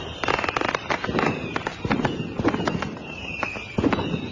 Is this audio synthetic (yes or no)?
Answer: no